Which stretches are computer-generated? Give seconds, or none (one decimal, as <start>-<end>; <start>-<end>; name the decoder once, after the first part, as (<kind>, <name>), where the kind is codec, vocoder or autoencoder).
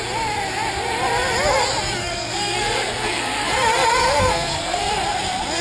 2.0-4.8 (codec, SNAC)